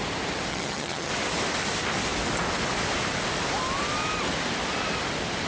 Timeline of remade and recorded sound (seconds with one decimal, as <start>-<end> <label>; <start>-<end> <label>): 0.0-0.5 recorded; 0.5-1.1 remade; 1.1-5.5 recorded

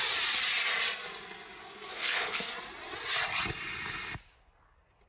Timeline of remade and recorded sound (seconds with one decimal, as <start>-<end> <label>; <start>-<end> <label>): 0.0-1.6 recorded; 1.6-2.5 remade; 2.5-5.1 recorded

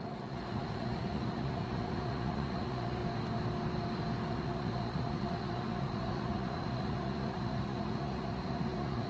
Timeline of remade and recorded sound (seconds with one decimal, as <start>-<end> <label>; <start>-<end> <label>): 0.0-3.0 remade; 3.0-4.3 recorded; 4.3-9.1 remade

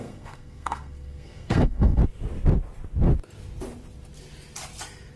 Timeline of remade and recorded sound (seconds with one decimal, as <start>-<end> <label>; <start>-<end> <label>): 0.0-2.0 remade; 2.0-5.2 recorded

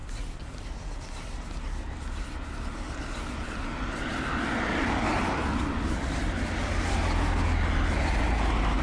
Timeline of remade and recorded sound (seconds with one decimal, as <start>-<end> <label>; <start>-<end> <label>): 0.0-8.8 recorded

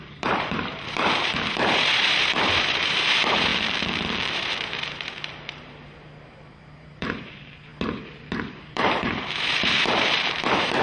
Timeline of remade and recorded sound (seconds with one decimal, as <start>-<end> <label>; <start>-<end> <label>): 0.0-3.5 remade; 3.5-4.3 recorded; 4.3-7.7 remade; 7.7-8.7 recorded; 8.7-10.8 remade

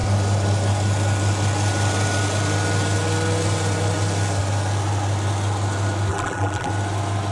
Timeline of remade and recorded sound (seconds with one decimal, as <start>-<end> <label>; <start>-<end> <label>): 0.0-6.1 recorded; 6.1-6.7 remade; 6.7-7.3 recorded

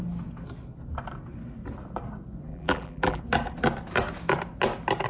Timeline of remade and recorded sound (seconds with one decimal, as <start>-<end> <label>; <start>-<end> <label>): 0.0-2.5 recorded; 2.5-3.2 remade; 3.2-5.1 recorded